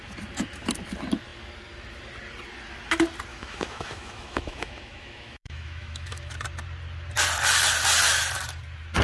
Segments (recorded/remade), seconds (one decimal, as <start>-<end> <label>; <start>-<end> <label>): 0.0-3.3 recorded; 3.3-6.3 remade; 6.3-9.0 recorded